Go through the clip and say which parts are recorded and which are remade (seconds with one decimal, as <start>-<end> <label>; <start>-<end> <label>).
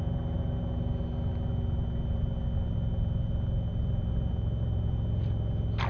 0.0-5.9 recorded